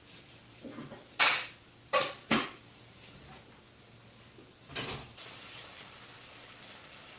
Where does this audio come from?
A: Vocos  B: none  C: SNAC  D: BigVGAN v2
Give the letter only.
B